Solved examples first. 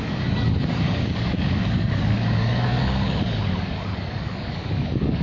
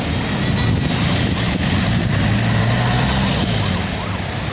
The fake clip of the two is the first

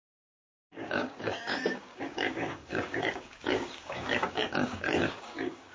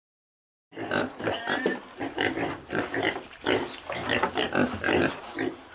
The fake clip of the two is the first